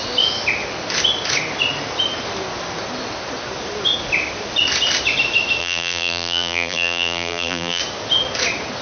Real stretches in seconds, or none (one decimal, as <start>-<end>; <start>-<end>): 0.0-5.6; 7.8-8.8